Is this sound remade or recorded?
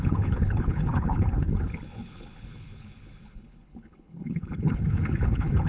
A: remade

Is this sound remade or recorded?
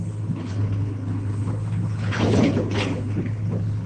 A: remade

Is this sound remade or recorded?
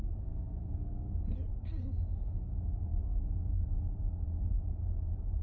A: recorded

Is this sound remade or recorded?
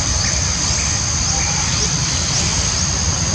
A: recorded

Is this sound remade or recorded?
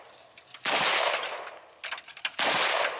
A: recorded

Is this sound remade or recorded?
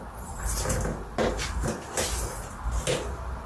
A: recorded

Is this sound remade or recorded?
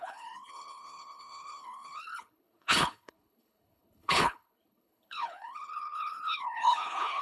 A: remade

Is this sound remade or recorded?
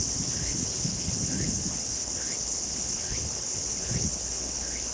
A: remade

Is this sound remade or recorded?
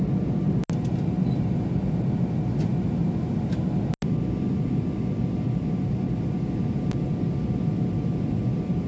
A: recorded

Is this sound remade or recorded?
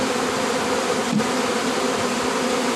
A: recorded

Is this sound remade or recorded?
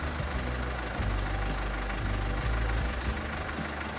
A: recorded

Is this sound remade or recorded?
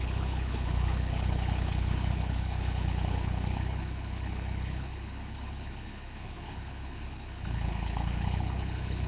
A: remade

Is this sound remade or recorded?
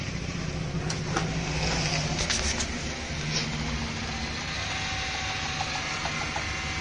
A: recorded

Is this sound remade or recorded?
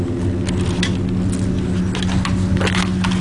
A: recorded